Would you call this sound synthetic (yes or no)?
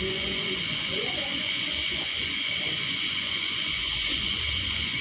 yes